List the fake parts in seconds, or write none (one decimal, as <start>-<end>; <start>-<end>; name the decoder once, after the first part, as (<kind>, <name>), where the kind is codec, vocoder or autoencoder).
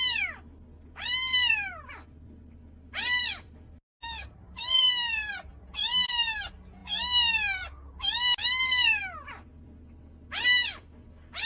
none